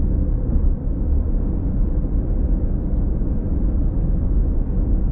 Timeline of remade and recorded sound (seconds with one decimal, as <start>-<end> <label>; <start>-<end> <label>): 0.0-5.1 recorded